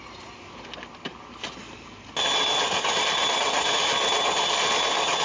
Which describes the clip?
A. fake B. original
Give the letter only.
B